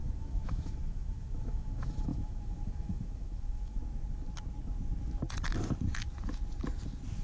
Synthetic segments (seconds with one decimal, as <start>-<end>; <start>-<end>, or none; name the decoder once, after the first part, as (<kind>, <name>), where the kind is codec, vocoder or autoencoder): 0.0-3.8 (autoencoder, DAC-VAE)